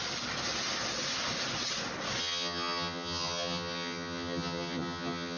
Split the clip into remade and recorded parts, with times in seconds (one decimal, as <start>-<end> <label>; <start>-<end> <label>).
0.0-2.2 recorded; 2.2-5.4 remade